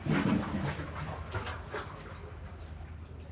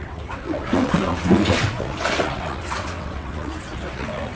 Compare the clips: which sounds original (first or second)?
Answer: first